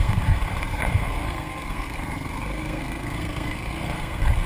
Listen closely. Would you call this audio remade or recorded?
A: remade